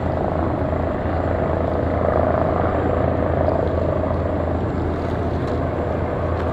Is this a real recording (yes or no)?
yes